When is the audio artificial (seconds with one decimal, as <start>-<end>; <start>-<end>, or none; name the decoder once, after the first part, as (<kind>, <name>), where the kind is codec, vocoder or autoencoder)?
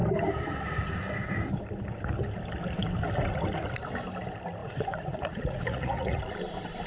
4.6-6.2 (vocoder, Vocos)